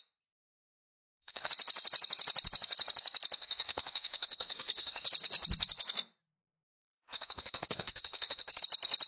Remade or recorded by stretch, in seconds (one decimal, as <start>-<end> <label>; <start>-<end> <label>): 0.0-0.9 recorded; 0.9-1.5 remade; 1.5-3.4 recorded; 3.4-5.1 remade; 5.1-6.7 recorded; 6.7-8.6 remade; 8.6-9.1 recorded